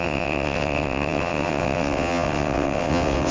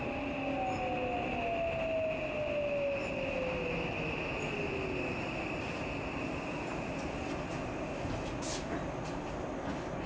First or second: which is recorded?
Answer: second